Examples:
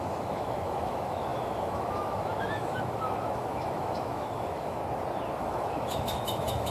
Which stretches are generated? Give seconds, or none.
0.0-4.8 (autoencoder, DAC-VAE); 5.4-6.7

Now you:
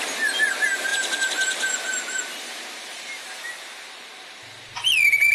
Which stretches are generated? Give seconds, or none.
none

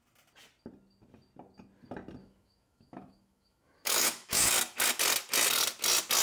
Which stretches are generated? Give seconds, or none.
2.2-4.5 (autoencoder, DAC-VAE)

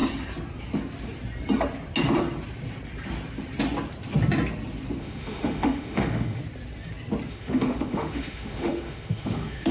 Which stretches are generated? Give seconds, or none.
5.0-6.4 (autoencoder, DAC-VAE); 7.3-9.7

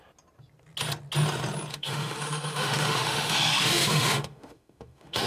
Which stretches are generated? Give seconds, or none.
1.7-5.3 (autoencoder, DAC-VAE)

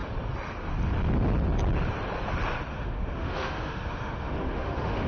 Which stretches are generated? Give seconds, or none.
2.7-5.1 (autoencoder, DAC-VAE)

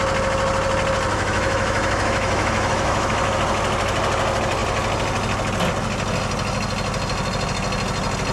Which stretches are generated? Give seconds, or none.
1.1-3.3 (autoencoder, DAC-VAE)

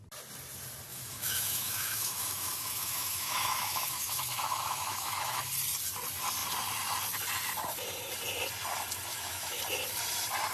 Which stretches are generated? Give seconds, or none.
0.9-5.4 (autoencoder, DAC-VAE); 9.1-9.6